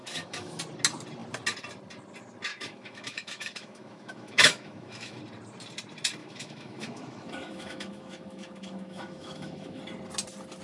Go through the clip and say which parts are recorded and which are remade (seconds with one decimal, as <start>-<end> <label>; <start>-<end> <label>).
0.0-0.6 remade; 0.6-2.5 recorded; 2.5-5.2 remade; 5.2-6.2 recorded; 6.2-9.8 remade; 9.8-10.6 recorded